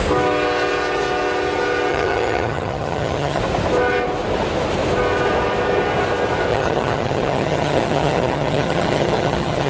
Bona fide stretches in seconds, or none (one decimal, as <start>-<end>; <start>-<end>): 0.0-1.9; 3.4-6.5